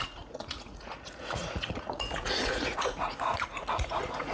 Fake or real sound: fake